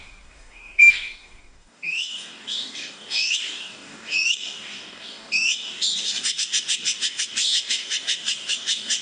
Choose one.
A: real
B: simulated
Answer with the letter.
B